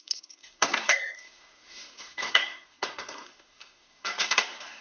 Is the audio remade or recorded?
remade